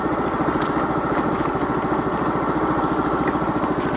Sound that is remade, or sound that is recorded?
recorded